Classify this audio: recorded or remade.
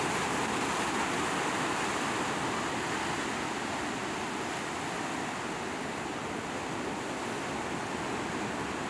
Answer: recorded